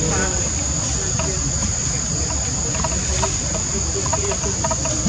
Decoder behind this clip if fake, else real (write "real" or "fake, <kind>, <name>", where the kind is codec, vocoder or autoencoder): real